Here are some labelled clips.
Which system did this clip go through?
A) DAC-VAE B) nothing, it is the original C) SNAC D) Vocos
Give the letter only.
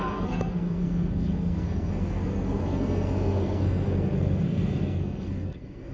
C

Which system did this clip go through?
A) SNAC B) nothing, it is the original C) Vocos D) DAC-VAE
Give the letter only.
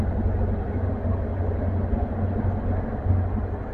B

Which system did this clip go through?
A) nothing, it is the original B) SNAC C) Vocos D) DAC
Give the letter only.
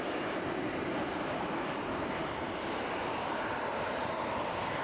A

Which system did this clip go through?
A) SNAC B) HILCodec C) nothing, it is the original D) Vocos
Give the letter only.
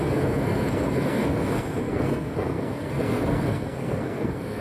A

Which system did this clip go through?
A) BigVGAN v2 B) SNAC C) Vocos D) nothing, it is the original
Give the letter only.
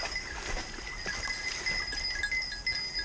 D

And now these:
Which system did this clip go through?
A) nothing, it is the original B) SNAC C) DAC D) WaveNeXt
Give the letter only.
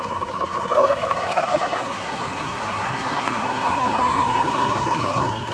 B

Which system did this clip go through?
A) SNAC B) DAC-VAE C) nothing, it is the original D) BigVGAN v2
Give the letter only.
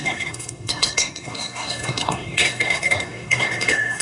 A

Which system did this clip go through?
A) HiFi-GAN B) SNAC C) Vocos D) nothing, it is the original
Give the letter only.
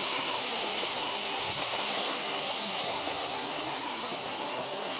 B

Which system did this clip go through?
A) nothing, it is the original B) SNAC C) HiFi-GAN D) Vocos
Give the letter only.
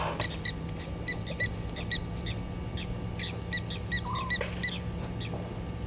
A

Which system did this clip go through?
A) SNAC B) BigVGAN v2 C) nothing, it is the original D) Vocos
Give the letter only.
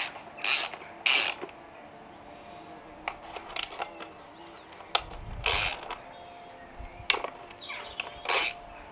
C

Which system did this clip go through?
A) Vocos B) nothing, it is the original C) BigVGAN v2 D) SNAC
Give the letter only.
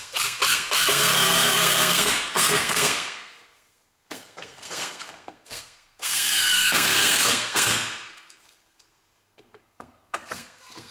D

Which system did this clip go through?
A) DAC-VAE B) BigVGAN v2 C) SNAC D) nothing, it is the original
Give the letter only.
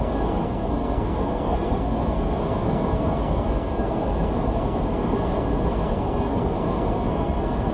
C